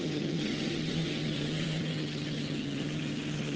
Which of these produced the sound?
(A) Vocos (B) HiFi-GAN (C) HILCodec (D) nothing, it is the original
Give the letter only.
B